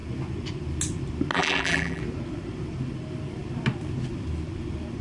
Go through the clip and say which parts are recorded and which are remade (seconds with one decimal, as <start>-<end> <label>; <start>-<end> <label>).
0.0-1.3 recorded; 1.3-2.0 remade; 2.0-5.0 recorded